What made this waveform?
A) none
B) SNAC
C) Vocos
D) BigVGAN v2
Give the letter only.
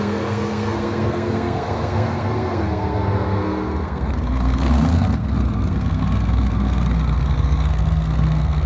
B